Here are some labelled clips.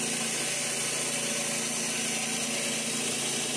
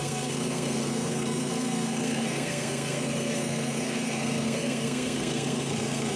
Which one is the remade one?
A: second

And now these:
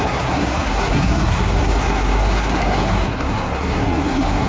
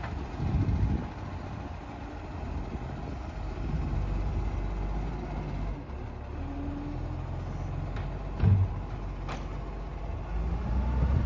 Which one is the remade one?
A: first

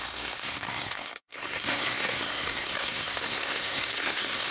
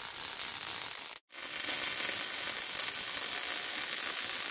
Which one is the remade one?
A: first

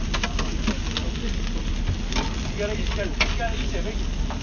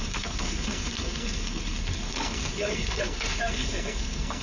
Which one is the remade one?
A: second